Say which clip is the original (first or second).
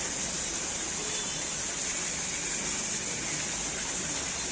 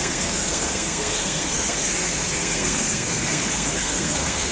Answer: first